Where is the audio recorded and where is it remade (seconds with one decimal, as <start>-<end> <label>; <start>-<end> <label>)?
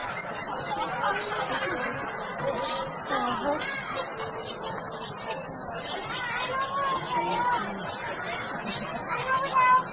0.0-9.9 recorded